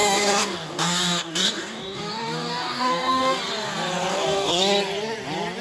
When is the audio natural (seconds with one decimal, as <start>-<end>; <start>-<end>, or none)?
3.4-4.1; 4.6-5.6